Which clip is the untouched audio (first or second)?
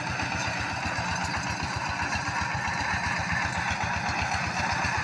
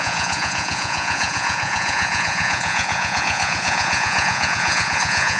first